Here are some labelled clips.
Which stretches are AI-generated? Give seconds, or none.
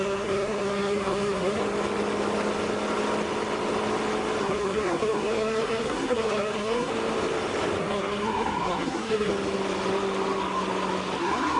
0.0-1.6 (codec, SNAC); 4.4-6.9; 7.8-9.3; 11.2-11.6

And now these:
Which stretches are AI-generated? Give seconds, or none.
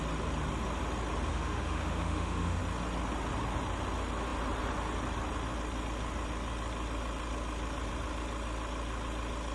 1.3-2.6 (autoencoder, DAC-VAE)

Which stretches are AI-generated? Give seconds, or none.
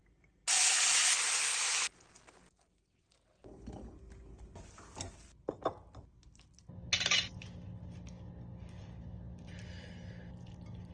none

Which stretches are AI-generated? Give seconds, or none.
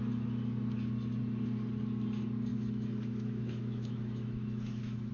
2.5-5.1 (autoencoder, DAC-VAE)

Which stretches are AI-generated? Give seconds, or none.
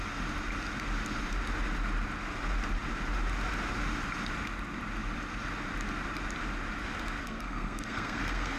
7.2-8.6 (codec, SNAC)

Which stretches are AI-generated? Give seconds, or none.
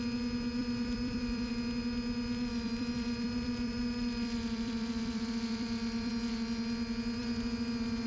0.6-1.5 (vocoder, BigVGAN v2); 2.5-6.1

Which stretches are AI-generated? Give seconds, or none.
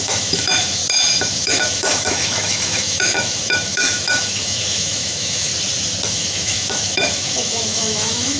0.0-0.8 (autoencoder, DAC-VAE); 1.4-5.5; 6.1-8.4